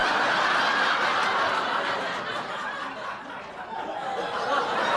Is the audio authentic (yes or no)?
yes